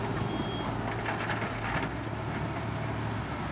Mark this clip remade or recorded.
recorded